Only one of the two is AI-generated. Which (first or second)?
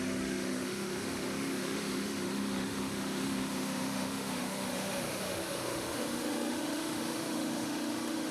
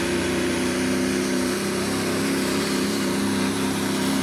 first